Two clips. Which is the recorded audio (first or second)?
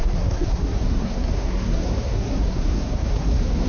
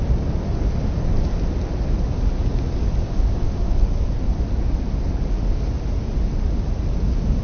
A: second